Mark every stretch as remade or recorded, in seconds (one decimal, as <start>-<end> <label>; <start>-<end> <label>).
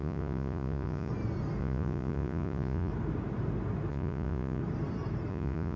0.0-1.1 remade; 1.1-1.6 recorded; 1.6-2.9 remade; 2.9-3.9 recorded; 3.9-4.6 remade; 4.6-5.3 recorded; 5.3-5.8 remade